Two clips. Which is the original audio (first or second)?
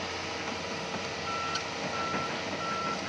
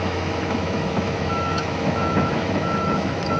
first